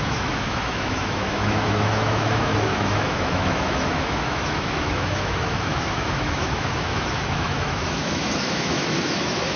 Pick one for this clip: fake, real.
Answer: fake